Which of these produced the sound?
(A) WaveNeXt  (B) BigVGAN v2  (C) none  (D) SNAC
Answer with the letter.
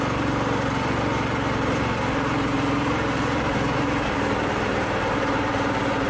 B